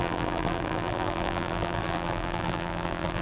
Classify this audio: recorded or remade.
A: remade